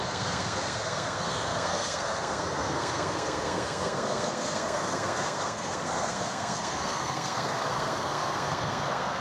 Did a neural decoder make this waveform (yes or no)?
yes